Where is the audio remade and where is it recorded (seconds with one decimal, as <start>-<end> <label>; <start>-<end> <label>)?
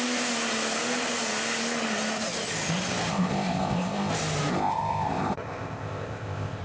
0.0-3.1 recorded; 3.1-4.1 remade; 4.1-4.5 recorded; 4.5-6.6 remade